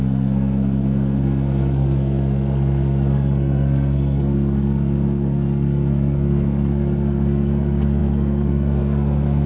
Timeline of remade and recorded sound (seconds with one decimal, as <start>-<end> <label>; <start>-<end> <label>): 0.0-9.5 remade